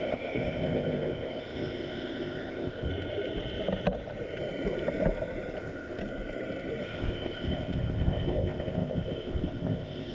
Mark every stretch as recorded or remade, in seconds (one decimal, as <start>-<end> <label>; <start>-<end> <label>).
0.0-2.9 remade; 2.9-5.6 recorded; 5.6-6.0 remade; 6.0-6.8 recorded; 6.8-10.1 remade